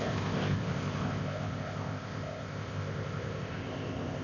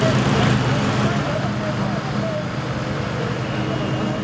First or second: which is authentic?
second